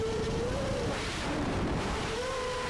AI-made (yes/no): yes